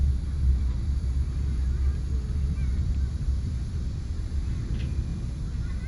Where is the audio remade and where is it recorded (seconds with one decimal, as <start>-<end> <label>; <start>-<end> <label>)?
0.0-5.1 remade; 5.1-5.9 recorded